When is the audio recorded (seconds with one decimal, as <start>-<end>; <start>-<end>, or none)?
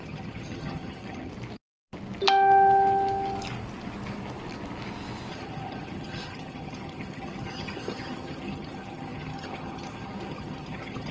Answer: 1.3-5.3